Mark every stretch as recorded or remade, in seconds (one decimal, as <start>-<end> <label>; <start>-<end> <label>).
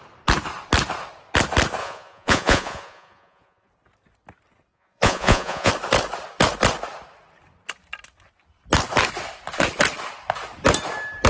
0.0-1.8 recorded; 1.8-3.7 remade; 3.7-4.7 recorded; 4.7-5.7 remade; 5.7-11.3 recorded